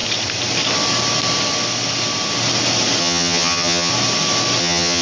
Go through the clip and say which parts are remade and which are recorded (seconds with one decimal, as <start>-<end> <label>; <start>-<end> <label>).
0.0-3.0 recorded; 3.0-3.9 remade; 3.9-4.6 recorded; 4.6-5.0 remade